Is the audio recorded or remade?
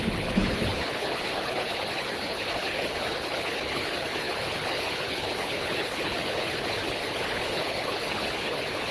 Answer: remade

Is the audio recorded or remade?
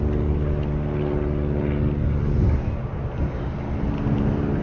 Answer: recorded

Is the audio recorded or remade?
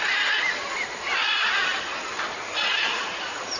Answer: recorded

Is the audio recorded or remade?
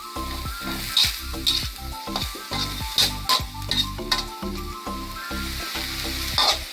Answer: recorded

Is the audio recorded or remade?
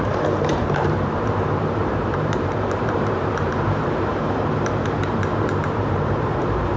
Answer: remade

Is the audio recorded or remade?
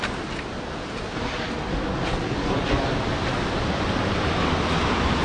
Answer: recorded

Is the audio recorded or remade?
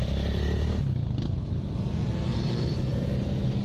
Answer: recorded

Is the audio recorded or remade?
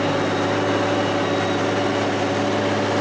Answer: recorded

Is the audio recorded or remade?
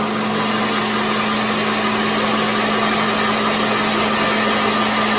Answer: recorded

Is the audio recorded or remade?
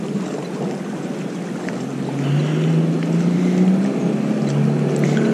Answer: recorded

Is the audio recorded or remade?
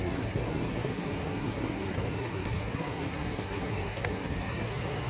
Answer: remade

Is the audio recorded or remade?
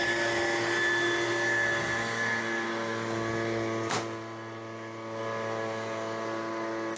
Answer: recorded